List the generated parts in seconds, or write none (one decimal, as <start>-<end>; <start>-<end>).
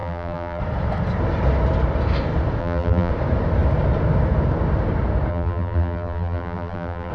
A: 0.0-0.6; 2.6-3.1; 5.3-7.1